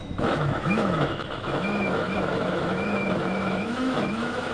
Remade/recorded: remade